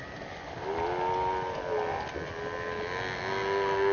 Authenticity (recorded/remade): recorded